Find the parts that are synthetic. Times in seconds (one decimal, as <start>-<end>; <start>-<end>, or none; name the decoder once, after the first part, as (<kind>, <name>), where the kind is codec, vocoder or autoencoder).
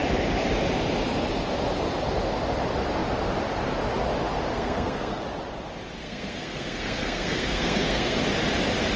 4.5-5.2 (codec, SNAC); 6.0-8.2